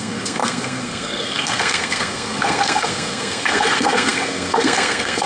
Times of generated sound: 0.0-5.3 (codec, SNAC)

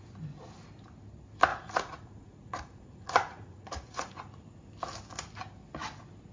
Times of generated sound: 1.5-4.4 (vocoder, Vocos)